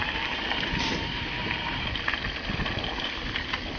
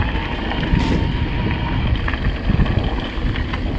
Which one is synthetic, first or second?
first